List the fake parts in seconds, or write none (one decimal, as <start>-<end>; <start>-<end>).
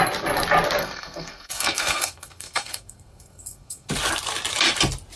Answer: 0.8-3.9